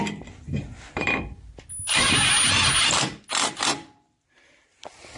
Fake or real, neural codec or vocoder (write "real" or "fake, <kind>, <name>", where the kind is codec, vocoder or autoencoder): real